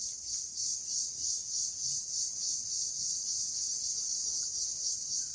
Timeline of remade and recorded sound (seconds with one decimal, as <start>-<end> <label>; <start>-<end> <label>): 0.0-5.3 recorded